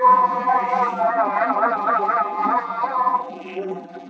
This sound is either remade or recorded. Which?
remade